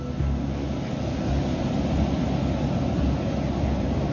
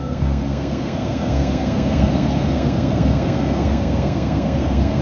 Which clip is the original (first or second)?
first